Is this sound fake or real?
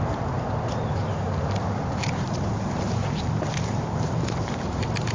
fake